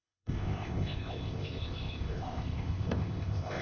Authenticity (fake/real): fake